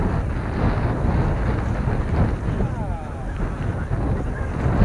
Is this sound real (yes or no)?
yes